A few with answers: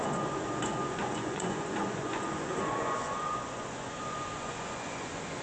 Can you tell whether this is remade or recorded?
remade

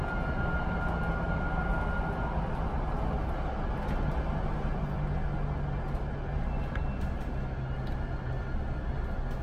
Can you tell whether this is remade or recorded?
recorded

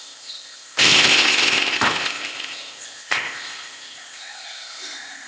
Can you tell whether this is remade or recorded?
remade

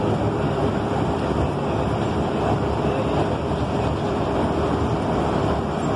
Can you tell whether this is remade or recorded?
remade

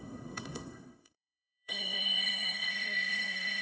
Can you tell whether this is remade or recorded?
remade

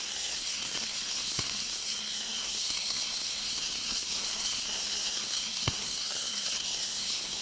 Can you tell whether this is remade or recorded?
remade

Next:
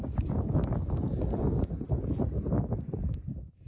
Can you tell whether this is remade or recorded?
recorded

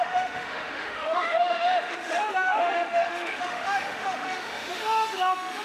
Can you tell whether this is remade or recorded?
remade